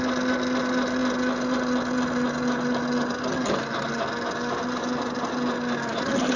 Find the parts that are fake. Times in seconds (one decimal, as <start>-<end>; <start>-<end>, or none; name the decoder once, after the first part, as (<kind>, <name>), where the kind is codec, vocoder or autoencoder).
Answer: none